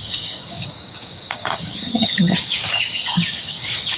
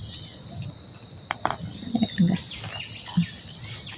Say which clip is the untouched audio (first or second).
second